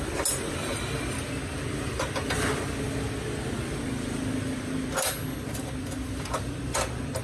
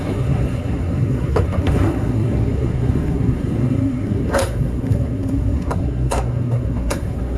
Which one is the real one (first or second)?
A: first